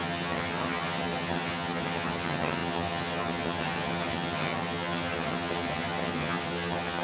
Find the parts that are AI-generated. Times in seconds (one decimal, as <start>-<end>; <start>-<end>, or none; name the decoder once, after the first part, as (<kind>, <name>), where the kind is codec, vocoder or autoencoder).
0.0-7.0 (vocoder, HiFi-GAN)